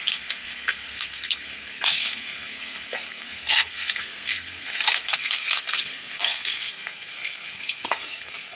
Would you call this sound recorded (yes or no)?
no